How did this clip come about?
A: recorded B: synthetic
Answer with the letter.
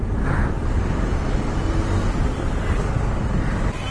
A